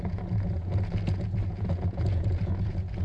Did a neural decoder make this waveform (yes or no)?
yes